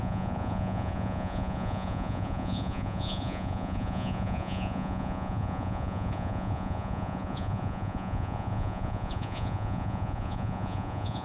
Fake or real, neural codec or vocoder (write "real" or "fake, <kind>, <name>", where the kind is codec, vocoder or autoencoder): fake, vocoder, Vocos